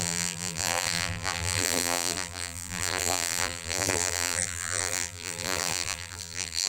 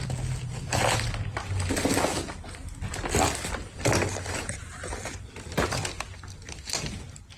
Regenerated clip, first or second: first